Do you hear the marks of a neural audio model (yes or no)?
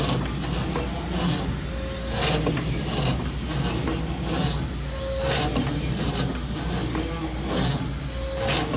no